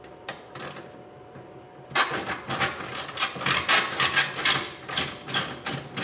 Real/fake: real